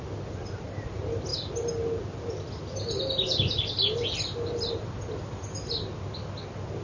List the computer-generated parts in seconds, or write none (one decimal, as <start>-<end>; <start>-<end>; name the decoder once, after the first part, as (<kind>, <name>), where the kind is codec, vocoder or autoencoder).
none